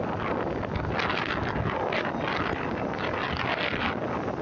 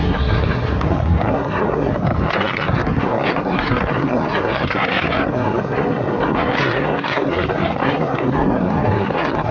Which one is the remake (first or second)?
second